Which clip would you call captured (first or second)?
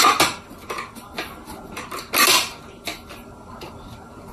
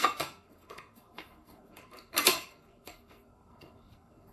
first